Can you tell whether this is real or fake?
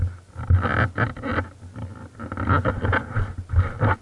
real